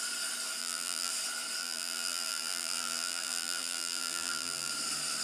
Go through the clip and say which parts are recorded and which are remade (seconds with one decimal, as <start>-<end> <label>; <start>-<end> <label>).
0.0-0.6 recorded; 0.6-1.1 remade; 1.1-1.6 recorded; 1.6-4.7 remade; 4.7-5.2 recorded